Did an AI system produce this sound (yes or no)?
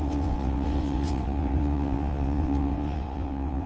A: yes